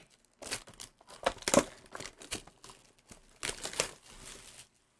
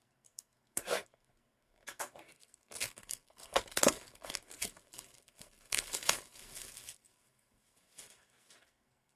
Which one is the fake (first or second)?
second